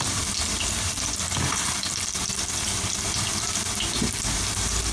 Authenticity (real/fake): real